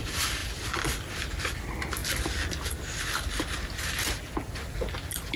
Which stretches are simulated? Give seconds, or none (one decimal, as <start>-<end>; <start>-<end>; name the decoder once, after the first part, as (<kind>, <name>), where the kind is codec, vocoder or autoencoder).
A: none